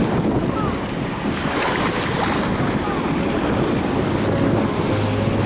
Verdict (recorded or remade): recorded